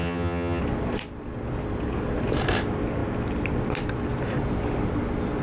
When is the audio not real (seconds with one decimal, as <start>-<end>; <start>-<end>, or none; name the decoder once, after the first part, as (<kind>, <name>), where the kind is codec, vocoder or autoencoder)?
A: 0.0-0.6 (vocoder, HiFi-GAN)